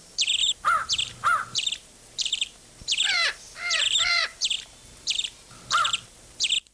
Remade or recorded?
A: remade